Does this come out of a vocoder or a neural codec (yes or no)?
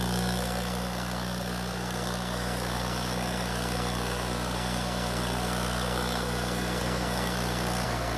yes